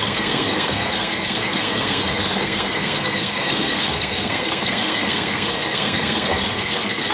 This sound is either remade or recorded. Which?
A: remade